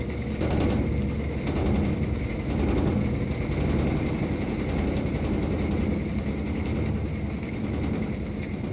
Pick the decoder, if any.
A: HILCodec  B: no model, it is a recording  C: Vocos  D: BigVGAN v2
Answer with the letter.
B